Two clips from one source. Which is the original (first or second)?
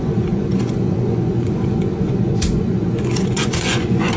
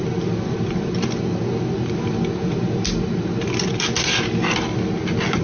second